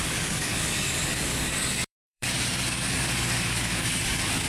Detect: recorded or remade remade